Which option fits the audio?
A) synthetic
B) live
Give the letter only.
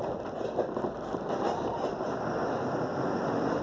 B